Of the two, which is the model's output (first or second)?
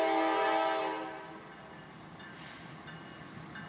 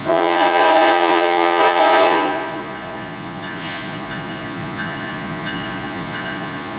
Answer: second